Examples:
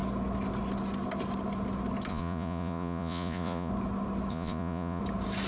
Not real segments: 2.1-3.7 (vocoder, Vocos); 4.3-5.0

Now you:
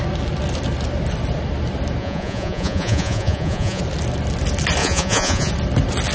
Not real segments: 2.0-3.8 (vocoder, Vocos); 4.8-5.5

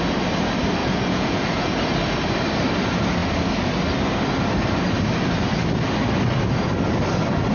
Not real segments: 0.8-1.7 (vocoder, Vocos)

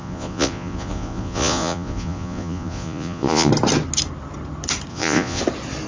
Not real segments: 0.0-3.5 (vocoder, Vocos); 4.9-5.4

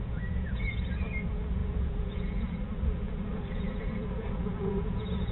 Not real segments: 0.0-5.3 (vocoder, Vocos)